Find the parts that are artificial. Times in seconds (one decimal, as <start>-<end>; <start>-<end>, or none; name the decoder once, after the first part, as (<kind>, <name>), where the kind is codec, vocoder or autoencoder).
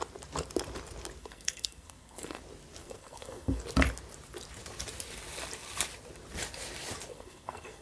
1.2-2.4 (codec, SNAC); 2.8-3.6; 7.1-7.8